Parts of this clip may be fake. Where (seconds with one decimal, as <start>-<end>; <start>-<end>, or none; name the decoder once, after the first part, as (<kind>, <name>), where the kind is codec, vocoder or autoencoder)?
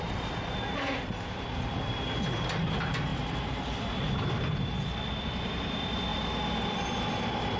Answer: none